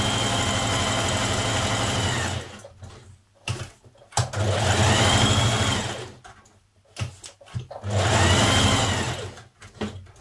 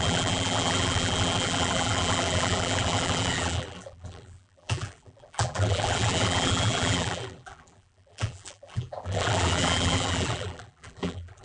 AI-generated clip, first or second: second